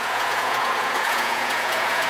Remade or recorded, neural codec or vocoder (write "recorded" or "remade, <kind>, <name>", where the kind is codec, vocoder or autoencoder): remade, vocoder, Vocos